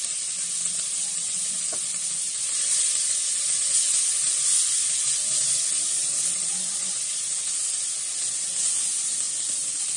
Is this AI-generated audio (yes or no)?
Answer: no